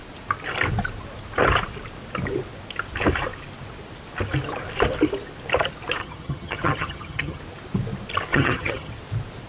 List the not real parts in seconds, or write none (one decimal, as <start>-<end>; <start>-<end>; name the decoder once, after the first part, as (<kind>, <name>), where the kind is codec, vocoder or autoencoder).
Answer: 6.0-7.4 (vocoder, HiFi-GAN); 8.3-8.9